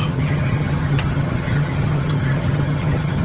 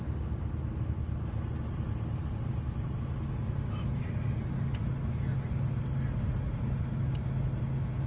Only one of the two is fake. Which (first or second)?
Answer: first